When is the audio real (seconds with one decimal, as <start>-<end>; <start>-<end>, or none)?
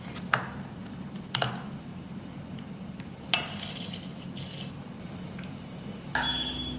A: 0.0-6.8